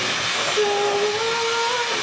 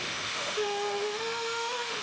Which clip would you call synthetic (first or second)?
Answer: second